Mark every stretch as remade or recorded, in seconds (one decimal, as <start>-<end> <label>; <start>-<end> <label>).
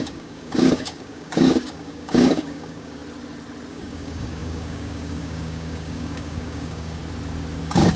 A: 0.0-3.0 remade; 3.0-3.7 recorded; 3.7-7.0 remade; 7.0-7.6 recorded; 7.6-8.0 remade